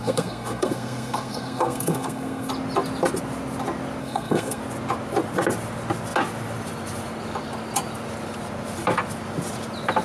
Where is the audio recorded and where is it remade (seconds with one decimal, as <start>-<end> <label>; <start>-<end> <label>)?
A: 0.0-2.5 remade; 2.5-4.0 recorded; 4.0-4.6 remade; 4.6-10.0 recorded